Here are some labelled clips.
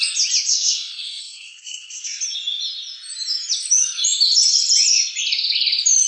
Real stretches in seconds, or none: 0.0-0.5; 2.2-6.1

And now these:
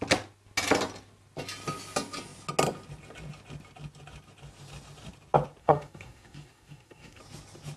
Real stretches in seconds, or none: 0.0-5.6; 7.2-7.8